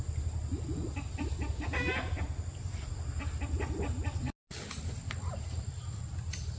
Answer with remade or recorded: recorded